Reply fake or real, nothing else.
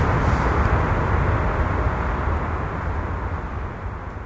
real